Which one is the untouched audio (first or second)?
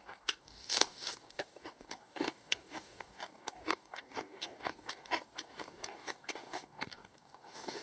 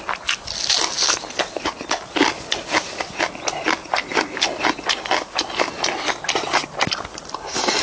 second